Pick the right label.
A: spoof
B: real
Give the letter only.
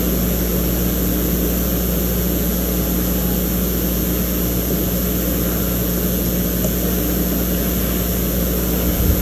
B